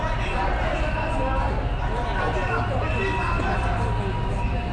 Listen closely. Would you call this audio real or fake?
real